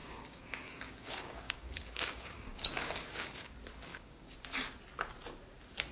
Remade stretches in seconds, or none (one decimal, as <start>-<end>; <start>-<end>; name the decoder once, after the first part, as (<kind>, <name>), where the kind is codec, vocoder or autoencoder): 0.0-3.5 (codec, DAC); 3.9-4.4